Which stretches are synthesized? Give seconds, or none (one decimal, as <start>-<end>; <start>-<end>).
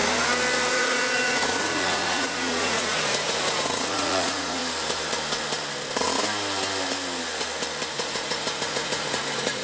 0.7-4.6; 7.9-9.6